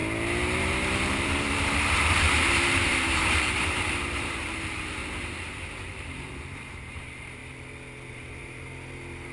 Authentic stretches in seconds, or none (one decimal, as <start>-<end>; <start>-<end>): 0.0-0.6; 5.0-5.8; 7.4-8.1